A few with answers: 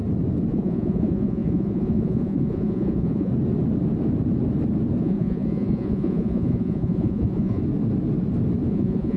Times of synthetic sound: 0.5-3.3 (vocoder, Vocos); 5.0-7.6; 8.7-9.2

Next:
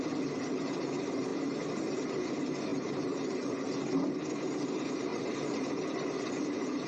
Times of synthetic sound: none

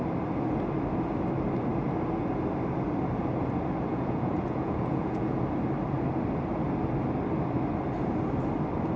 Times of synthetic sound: 3.9-5.4 (vocoder, Vocos)

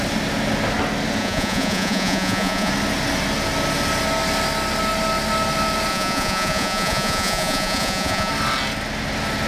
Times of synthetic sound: 1.2-2.7 (vocoder, Vocos); 5.9-8.3